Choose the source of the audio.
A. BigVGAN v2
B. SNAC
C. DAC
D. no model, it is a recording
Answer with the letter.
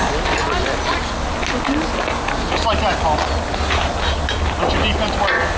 D